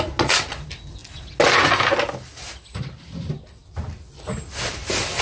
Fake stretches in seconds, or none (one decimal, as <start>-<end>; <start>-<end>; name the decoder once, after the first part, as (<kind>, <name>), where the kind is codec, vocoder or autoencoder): none